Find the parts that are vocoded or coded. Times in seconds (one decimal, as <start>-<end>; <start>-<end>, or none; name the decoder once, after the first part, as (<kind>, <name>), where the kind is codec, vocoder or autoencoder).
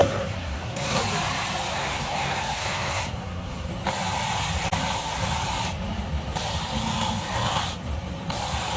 0.0-1.0 (codec, SNAC); 1.7-3.7